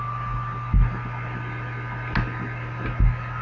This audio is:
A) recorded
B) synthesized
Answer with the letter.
A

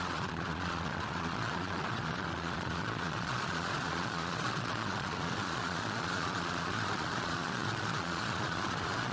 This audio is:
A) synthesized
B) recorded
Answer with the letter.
A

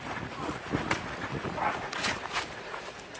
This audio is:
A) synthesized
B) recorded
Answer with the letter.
A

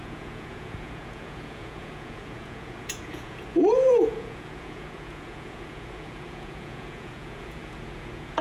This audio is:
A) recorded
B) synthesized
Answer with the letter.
B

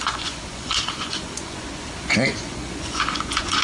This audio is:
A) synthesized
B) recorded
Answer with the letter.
A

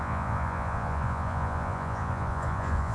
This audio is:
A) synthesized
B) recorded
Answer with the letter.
A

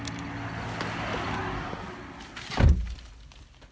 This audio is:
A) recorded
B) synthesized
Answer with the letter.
A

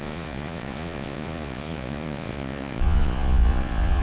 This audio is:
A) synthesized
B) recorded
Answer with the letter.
A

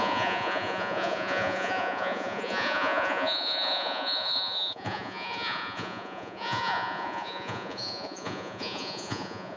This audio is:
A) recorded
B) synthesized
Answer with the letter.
B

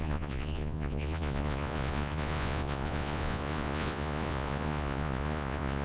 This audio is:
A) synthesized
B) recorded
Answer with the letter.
A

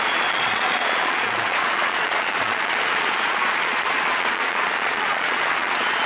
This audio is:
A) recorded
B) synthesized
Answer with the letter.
B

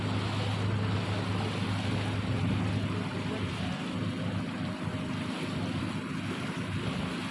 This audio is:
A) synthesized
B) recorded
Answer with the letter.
B